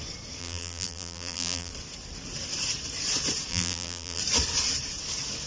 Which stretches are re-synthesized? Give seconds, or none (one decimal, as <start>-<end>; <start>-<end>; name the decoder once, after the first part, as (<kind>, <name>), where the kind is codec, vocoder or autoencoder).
0.4-1.7 (vocoder, BigVGAN v2); 3.5-4.2